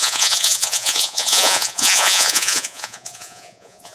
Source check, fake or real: fake